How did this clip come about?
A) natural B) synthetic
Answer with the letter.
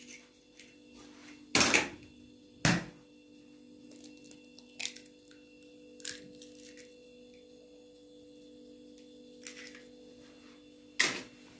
A